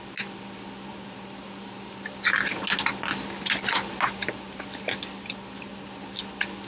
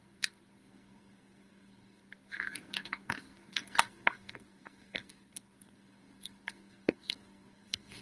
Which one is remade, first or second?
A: second